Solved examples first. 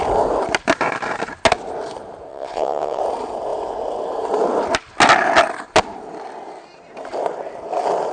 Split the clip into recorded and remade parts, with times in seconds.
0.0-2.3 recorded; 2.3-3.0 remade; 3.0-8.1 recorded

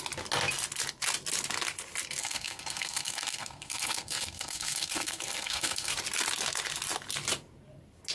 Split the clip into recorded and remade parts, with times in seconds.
0.0-2.2 recorded; 2.2-5.9 remade; 5.9-8.1 recorded

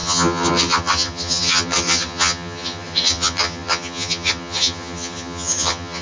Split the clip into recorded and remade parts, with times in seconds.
0.0-6.0 remade